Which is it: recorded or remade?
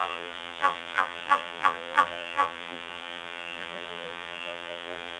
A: remade